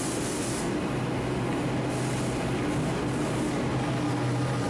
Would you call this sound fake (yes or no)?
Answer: no